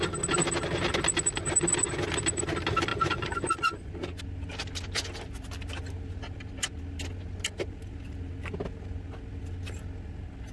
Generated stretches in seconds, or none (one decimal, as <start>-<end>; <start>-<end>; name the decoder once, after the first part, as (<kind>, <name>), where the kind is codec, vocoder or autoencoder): 2.9-4.2 (vocoder, Vocos)